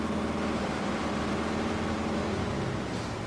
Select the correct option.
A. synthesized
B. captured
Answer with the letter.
B